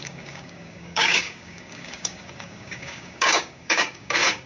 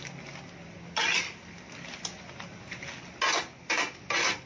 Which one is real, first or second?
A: second